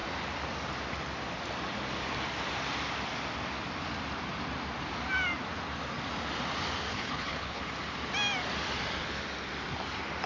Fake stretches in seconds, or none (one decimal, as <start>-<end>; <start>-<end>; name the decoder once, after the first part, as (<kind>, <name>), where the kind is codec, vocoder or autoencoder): 6.9-7.6 (codec, HILCodec)